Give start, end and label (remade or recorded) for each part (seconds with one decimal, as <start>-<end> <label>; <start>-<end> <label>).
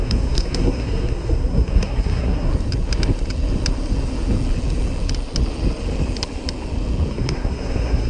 0.0-2.5 remade; 2.5-7.1 recorded; 7.1-8.1 remade